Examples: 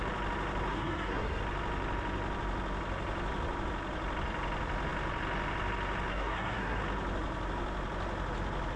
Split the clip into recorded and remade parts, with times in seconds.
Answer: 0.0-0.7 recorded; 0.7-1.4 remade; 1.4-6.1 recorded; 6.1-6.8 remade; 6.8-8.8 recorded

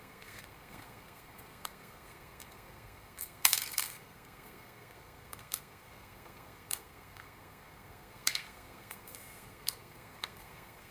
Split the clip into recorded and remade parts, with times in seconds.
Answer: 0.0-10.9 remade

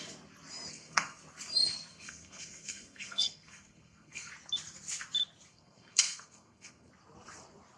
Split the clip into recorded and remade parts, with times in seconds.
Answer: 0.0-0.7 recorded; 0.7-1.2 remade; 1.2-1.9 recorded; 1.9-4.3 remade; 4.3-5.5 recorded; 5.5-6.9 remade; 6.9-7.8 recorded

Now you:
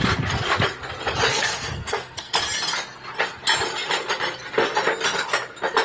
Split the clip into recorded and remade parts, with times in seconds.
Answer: 0.0-1.3 recorded; 1.3-2.3 remade; 2.3-5.8 recorded